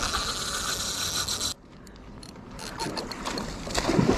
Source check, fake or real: real